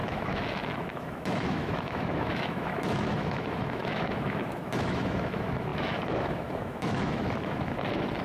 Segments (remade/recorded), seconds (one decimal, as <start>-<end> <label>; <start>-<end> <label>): 0.0-8.2 remade